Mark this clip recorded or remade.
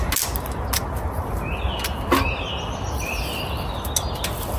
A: recorded